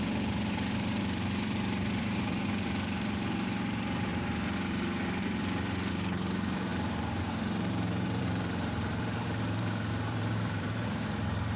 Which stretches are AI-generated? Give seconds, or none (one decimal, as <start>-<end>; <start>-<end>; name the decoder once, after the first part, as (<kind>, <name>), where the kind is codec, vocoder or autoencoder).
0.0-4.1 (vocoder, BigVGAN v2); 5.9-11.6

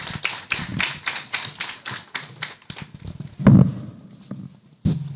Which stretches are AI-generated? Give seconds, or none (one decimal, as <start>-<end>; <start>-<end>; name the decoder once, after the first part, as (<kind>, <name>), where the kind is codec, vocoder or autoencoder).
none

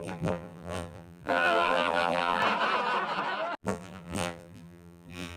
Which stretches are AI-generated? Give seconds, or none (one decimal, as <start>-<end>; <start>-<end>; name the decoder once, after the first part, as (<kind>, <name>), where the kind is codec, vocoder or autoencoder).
0.0-2.4 (vocoder, BigVGAN v2); 3.6-5.4